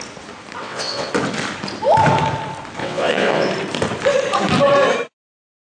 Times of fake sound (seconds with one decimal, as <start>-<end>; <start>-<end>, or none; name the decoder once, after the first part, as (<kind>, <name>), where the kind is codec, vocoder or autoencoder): 0.6-1.1 (vocoder, WaveNeXt); 2.8-3.5